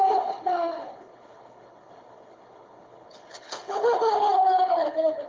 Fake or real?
fake